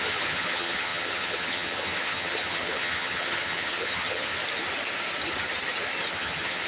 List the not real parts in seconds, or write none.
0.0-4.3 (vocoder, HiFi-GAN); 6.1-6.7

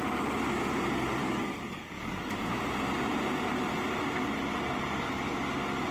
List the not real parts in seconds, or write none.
1.2-2.4 (codec, DAC)

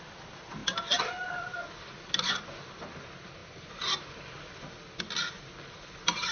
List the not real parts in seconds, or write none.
none